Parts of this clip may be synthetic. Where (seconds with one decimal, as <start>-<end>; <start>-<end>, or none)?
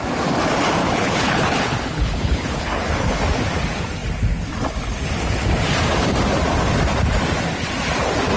0.8-3.2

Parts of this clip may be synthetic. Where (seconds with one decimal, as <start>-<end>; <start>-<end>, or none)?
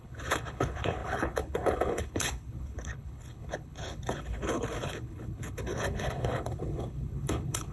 0.0-7.7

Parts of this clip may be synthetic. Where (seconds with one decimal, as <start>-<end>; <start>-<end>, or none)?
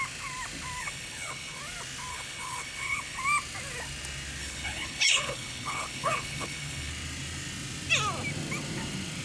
0.8-1.6; 2.1-3.2; 4.4-6.9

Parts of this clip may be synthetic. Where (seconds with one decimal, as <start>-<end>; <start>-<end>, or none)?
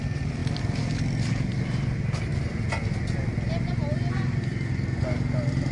none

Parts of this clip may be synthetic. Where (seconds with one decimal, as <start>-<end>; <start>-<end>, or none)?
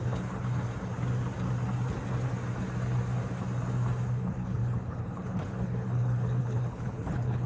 0.0-0.7; 4.1-7.5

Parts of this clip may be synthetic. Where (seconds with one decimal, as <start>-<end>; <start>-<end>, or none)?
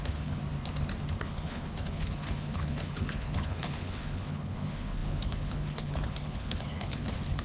0.0-0.4; 1.2-7.4